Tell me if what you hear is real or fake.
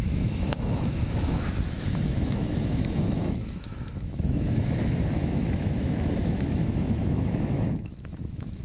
fake